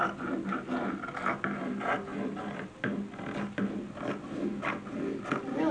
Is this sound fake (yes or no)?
no